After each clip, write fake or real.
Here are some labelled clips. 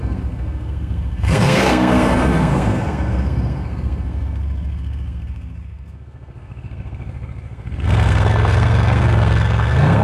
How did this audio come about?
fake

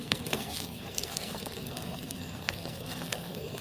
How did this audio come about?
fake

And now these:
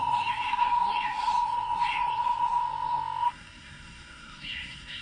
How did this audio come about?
fake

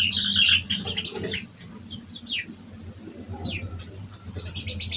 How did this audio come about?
real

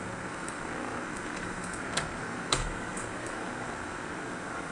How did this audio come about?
fake